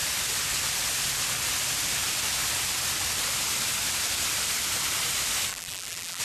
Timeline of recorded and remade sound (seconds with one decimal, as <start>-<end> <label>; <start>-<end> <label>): 0.0-5.5 recorded; 5.5-6.2 remade

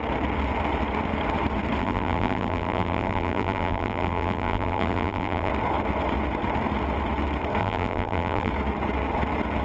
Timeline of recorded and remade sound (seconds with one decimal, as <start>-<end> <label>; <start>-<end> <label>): 0.0-1.8 recorded; 1.8-5.5 remade; 5.5-7.6 recorded; 7.6-8.5 remade; 8.5-9.6 recorded

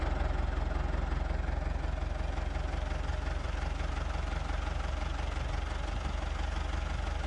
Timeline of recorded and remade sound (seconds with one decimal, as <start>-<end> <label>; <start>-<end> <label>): 0.0-3.1 recorded; 3.1-3.9 remade; 3.9-7.3 recorded

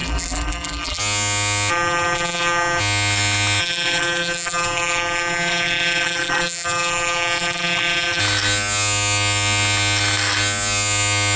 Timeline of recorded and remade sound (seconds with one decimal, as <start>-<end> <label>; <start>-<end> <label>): 0.0-1.0 remade; 1.0-1.7 recorded; 1.7-2.8 remade; 2.8-3.6 recorded; 3.6-8.2 remade; 8.2-11.4 recorded

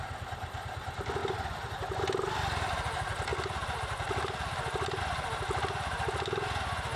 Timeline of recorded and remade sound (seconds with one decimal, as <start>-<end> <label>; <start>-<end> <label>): 0.0-1.2 recorded; 1.2-2.0 remade; 2.0-3.3 recorded; 3.3-5.0 remade; 5.0-7.0 recorded

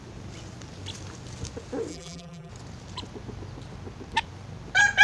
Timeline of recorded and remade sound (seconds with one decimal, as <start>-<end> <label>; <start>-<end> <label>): 0.0-1.9 recorded; 1.9-2.5 remade; 2.5-5.0 recorded